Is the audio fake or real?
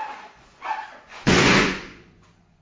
fake